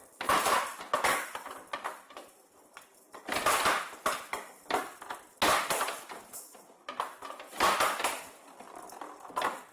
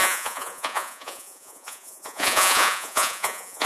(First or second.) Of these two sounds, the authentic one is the first